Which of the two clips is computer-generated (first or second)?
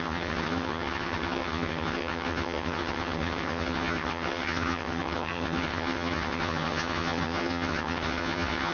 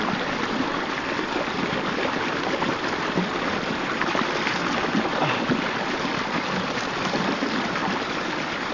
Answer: first